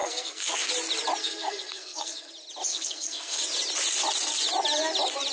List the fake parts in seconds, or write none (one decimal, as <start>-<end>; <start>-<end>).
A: 0.0-0.7; 1.2-2.3; 2.7-3.4